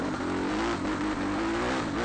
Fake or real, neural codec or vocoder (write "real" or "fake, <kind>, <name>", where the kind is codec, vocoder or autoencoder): real